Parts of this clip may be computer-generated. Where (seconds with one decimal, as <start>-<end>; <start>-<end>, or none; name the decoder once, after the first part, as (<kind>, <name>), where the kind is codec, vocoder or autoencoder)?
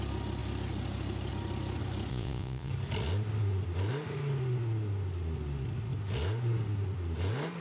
2.1-2.7 (vocoder, Vocos)